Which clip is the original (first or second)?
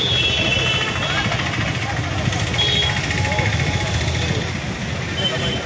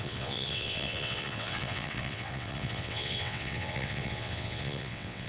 first